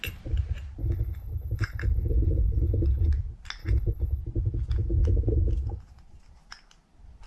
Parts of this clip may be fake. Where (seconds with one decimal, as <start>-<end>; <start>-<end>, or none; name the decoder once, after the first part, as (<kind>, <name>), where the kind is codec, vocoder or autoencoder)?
0.8-3.1 (codec, HILCodec); 3.6-4.2